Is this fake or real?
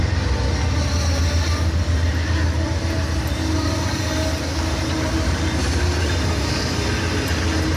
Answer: real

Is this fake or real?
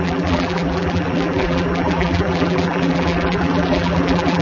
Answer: fake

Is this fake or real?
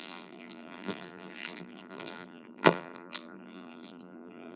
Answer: fake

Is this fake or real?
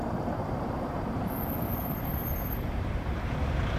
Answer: fake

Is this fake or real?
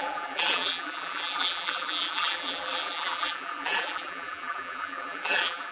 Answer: fake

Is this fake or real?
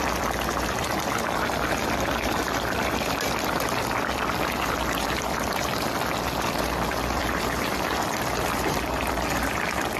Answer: fake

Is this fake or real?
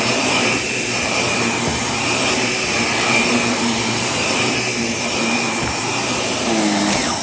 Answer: fake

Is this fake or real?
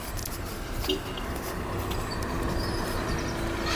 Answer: real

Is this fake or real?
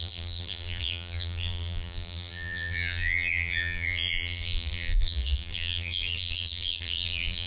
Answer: fake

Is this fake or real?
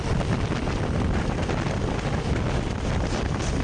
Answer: fake